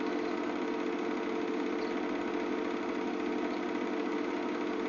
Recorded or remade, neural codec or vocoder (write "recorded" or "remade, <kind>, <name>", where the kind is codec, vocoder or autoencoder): recorded